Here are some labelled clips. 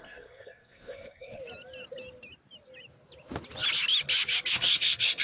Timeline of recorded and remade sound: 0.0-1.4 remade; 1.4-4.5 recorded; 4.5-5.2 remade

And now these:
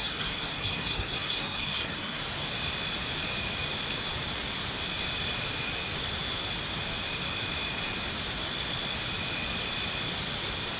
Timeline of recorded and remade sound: 0.0-2.2 remade; 2.2-10.8 recorded

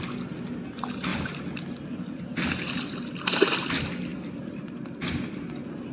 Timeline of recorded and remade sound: 0.0-5.9 recorded

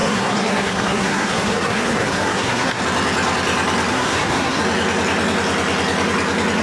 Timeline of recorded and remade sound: 0.0-2.8 remade; 2.8-3.9 recorded; 3.9-4.6 remade; 4.6-6.6 recorded

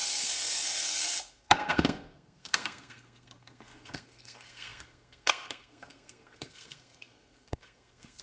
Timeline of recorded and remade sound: 0.0-8.2 remade

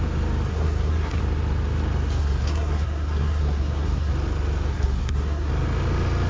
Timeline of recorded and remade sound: 0.0-0.5 recorded; 0.5-1.2 remade; 1.2-2.2 recorded; 2.2-4.1 remade; 4.1-4.7 recorded; 4.7-5.5 remade; 5.5-6.3 recorded